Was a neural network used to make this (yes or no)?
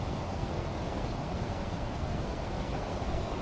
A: yes